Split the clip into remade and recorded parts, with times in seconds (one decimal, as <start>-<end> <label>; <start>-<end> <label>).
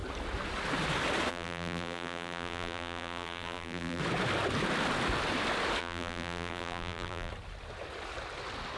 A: 0.0-1.3 recorded; 1.3-4.0 remade; 4.0-5.8 recorded; 5.8-7.3 remade; 7.3-8.8 recorded